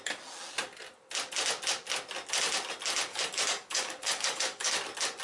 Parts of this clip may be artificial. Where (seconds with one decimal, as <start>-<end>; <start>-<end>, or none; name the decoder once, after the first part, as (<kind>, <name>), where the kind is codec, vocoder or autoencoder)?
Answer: 3.1-4.7 (codec, DAC)